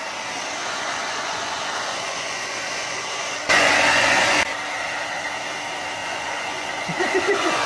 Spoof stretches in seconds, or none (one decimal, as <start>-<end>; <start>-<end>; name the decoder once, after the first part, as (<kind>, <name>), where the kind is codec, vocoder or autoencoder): 0.6-4.4 (vocoder, Vocos); 6.0-7.7